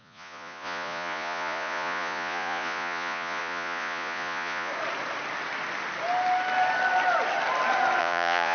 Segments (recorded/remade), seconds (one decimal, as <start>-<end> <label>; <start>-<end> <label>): 0.0-4.7 remade; 4.7-8.0 recorded; 8.0-8.5 remade